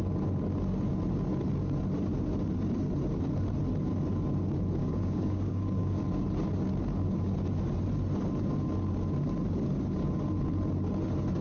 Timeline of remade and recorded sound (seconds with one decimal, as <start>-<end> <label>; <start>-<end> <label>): 0.0-4.8 recorded; 4.8-6.0 remade; 6.0-11.4 recorded